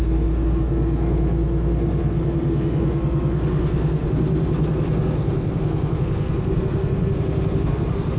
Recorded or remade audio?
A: remade